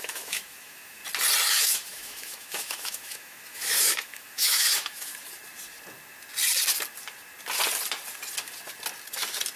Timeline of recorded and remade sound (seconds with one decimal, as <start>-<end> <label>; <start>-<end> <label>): 0.0-1.0 remade; 1.0-1.5 recorded; 1.5-5.1 remade; 5.1-9.6 recorded